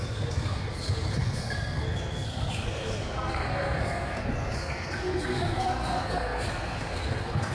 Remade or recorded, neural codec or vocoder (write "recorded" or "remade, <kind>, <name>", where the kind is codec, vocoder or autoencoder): remade, codec, SNAC